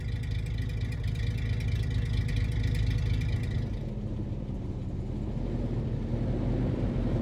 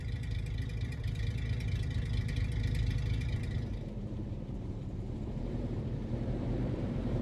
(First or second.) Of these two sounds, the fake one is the second